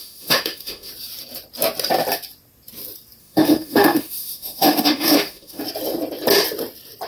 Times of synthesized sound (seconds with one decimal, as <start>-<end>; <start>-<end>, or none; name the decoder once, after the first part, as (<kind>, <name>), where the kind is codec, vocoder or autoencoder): 0.0-0.9 (autoencoder, DAC-VAE); 3.2-5.6